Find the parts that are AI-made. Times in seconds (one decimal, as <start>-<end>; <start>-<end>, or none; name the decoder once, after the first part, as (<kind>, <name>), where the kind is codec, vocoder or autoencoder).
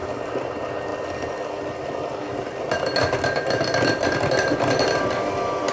none